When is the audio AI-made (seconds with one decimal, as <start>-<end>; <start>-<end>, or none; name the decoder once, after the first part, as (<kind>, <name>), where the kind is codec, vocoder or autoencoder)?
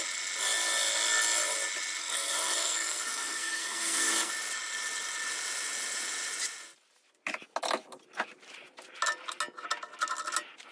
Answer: 2.0-4.3 (codec, SNAC)